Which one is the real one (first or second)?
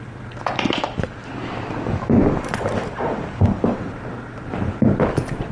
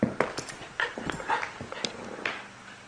second